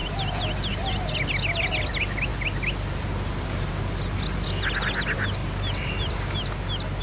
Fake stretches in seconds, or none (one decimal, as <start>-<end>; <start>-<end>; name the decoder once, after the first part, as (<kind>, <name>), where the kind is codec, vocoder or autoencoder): none

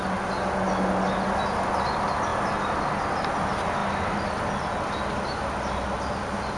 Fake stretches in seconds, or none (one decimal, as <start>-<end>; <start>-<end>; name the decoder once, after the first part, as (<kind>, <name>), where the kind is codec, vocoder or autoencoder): none

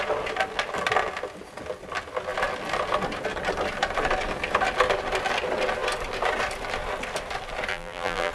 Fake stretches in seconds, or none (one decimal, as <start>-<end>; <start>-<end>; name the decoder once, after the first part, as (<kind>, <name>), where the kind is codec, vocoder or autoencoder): 7.7-8.3 (vocoder, BigVGAN v2)

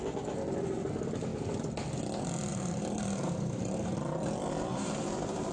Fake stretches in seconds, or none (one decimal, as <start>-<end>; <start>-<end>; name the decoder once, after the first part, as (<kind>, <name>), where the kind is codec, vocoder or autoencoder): 2.5-3.9 (vocoder, BigVGAN v2); 4.7-5.5

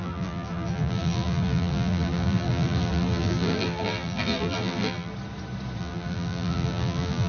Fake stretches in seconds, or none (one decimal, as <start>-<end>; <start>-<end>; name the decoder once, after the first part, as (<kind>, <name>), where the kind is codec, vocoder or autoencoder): 0.0-5.1 (vocoder, BigVGAN v2); 5.8-7.3

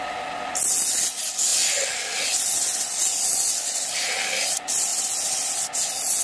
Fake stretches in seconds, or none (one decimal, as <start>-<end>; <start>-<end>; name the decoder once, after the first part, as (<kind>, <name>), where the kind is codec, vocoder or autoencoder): 4.9-5.5 (vocoder, BigVGAN v2)